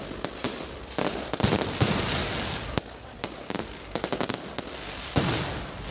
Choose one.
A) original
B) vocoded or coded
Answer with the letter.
A